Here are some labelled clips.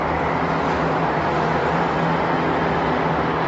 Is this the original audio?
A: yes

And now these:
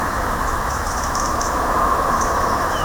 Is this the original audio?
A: no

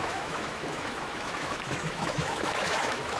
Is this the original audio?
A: no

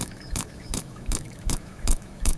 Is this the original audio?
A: no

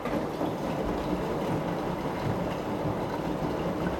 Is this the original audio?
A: yes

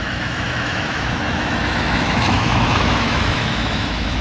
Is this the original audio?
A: no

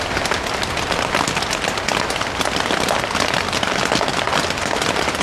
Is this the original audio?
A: yes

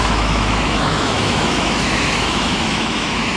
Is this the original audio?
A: no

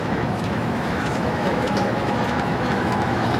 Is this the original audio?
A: no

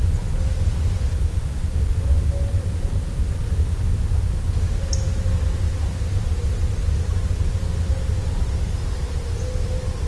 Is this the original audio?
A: yes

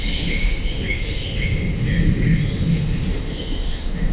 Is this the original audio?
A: no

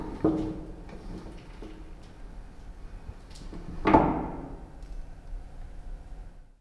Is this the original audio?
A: yes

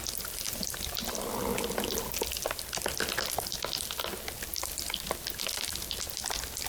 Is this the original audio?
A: yes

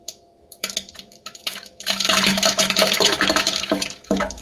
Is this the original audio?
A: no